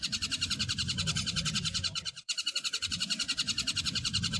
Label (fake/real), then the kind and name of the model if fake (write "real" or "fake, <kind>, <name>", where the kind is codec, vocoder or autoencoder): fake, vocoder, Vocos